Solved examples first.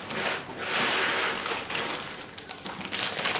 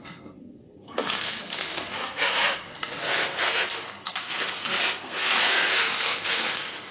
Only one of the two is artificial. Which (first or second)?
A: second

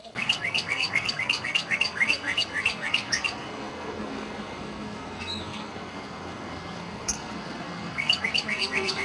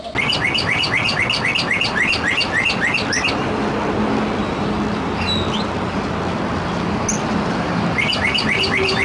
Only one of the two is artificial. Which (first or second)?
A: first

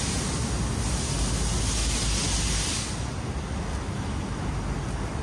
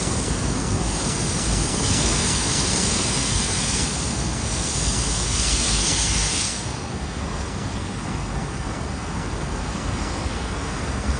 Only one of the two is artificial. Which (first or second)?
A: second